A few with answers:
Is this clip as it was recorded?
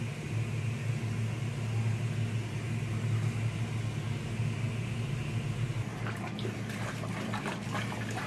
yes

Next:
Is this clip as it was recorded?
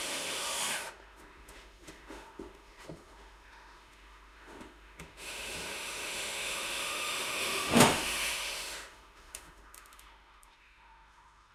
no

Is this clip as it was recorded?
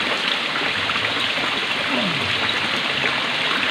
yes